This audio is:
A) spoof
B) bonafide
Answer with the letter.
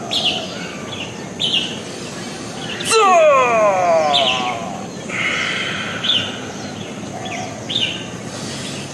B